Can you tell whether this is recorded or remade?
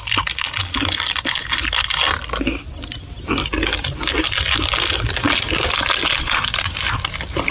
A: recorded